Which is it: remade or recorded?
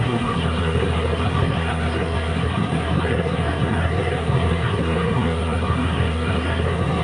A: remade